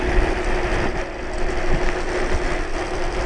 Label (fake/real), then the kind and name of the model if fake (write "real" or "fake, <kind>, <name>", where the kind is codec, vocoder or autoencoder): real